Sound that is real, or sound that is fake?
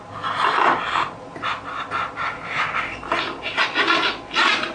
real